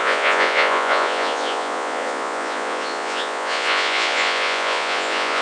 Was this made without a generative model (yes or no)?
no